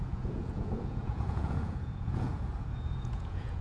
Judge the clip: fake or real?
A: fake